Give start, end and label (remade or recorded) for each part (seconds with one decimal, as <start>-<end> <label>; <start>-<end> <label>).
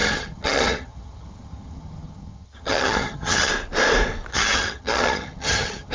0.0-3.5 remade; 3.5-4.3 recorded; 4.3-5.9 remade